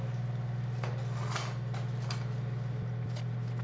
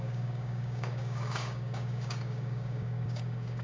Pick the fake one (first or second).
second